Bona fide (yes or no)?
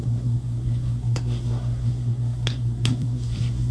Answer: no